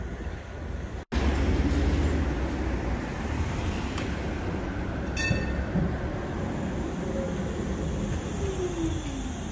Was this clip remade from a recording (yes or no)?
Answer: no